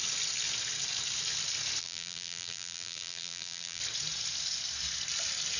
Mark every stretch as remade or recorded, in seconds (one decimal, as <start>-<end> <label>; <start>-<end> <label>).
0.0-1.8 recorded; 1.8-3.8 remade; 3.8-5.6 recorded